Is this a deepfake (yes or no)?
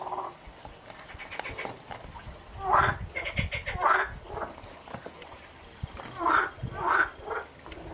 no